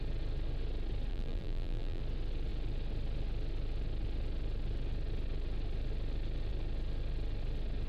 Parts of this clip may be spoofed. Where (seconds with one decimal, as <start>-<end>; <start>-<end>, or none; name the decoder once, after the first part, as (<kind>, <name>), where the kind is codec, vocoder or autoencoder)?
1.1-2.0 (vocoder, BigVGAN v2)